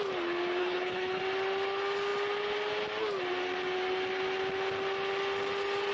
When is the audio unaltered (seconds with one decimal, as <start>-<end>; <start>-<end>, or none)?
0.0-0.6; 1.2-5.9